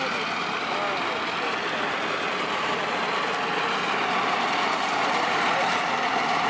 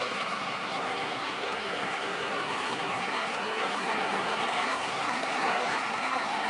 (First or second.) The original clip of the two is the first